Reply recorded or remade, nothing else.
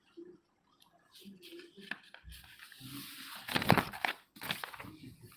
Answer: recorded